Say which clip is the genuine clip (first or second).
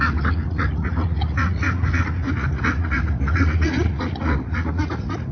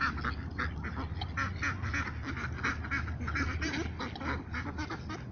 second